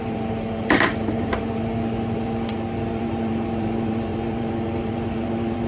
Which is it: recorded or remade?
remade